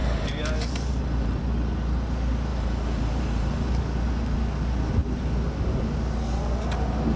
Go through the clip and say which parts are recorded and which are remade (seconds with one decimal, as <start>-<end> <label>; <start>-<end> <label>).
0.0-1.4 remade; 1.4-2.5 recorded; 2.5-3.8 remade; 3.8-7.2 recorded